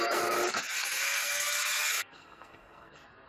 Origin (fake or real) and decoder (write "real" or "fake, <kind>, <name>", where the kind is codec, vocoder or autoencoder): fake, codec, SNAC